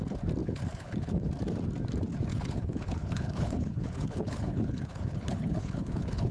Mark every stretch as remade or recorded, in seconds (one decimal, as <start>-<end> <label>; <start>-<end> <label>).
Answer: 0.0-0.4 recorded; 0.4-1.3 remade; 1.3-2.3 recorded; 2.3-6.3 remade